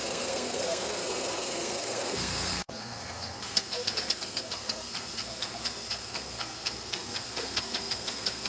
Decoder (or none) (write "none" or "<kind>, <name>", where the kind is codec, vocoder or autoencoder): codec, SNAC